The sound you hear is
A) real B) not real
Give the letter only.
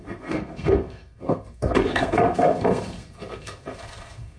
B